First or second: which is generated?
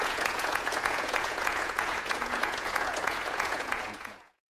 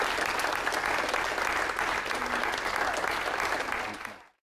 first